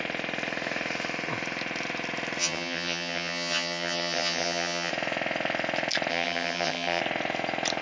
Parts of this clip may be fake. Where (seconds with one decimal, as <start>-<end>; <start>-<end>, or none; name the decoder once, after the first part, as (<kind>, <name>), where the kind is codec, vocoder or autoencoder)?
2.4-4.9 (vocoder, HiFi-GAN); 6.1-7.0